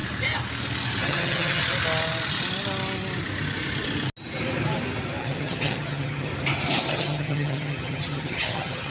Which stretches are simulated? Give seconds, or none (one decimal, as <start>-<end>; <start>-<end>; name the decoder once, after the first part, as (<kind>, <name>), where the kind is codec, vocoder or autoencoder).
1.0-1.6 (vocoder, HiFi-GAN); 5.2-6.3; 6.9-8.9